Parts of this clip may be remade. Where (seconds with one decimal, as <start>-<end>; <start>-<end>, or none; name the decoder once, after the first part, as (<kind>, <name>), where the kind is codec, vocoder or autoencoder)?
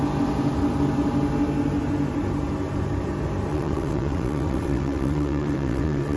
3.5-6.2 (vocoder, WaveNeXt)